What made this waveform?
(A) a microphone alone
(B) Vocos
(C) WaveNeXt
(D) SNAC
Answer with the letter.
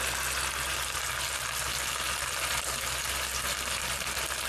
A